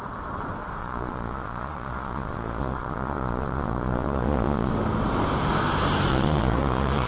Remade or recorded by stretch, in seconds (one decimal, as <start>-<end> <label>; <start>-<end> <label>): 0.0-0.8 recorded; 0.8-4.7 remade; 4.7-6.1 recorded; 6.1-7.1 remade